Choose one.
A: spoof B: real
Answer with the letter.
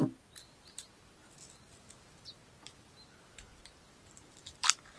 B